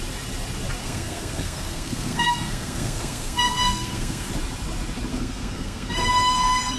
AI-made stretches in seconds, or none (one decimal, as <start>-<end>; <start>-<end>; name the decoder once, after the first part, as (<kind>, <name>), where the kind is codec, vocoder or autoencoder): 0.8-4.3 (codec, SNAC); 5.1-6.8